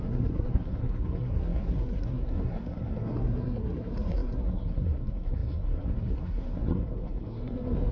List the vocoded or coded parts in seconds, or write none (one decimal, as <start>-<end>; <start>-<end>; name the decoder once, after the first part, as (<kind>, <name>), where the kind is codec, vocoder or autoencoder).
0.0-7.9 (codec, SNAC)